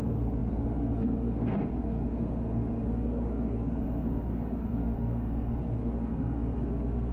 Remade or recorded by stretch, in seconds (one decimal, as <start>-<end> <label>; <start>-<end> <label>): 0.0-7.1 remade